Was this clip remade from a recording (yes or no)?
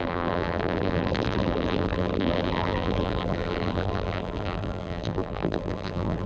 yes